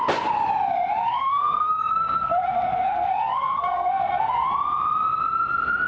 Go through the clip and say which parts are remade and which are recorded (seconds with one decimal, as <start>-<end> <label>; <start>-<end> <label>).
0.0-1.0 recorded; 1.0-4.5 remade; 4.5-5.9 recorded